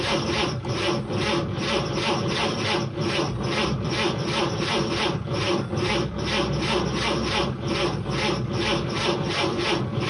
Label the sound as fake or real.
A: fake